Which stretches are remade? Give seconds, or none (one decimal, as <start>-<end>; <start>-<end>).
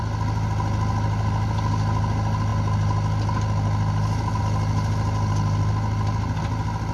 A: none